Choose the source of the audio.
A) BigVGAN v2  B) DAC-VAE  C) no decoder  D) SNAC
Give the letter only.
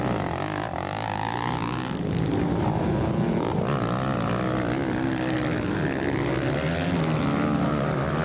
C